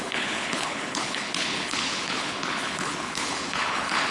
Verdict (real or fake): fake